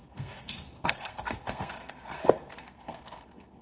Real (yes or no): no